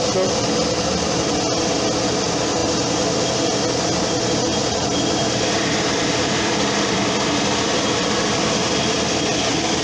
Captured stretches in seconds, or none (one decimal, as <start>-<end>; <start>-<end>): 0.0-4.6; 8.7-9.8